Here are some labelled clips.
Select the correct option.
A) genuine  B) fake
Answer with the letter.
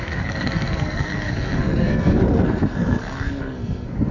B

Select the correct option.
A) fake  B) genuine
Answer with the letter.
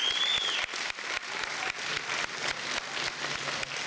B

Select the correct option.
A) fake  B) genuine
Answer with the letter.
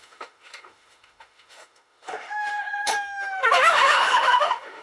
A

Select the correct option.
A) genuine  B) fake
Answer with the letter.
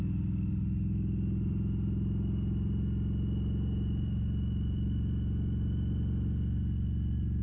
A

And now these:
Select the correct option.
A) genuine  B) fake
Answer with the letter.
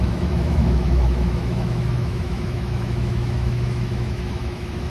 B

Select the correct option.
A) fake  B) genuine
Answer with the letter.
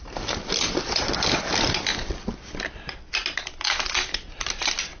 B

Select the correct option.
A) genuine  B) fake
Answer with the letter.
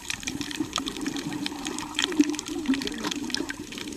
B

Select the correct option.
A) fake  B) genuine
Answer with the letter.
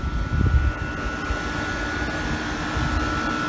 B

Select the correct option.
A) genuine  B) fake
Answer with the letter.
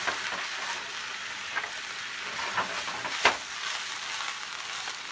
A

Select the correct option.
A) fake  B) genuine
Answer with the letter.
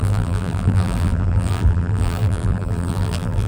A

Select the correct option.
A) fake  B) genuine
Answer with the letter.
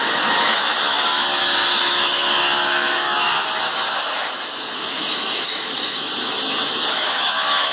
A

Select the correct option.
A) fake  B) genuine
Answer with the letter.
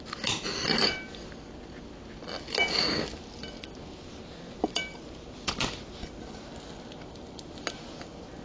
B